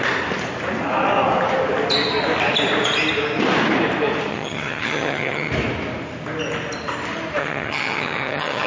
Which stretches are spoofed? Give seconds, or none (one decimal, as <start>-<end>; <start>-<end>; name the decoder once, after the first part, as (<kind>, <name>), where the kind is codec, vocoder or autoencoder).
4.3-5.5 (vocoder, HiFi-GAN); 7.4-8.7